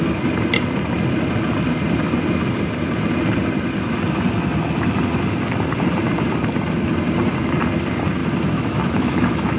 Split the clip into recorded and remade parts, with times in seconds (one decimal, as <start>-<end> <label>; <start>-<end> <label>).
0.0-8.2 recorded; 8.2-9.6 remade